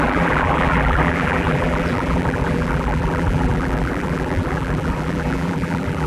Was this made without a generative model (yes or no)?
no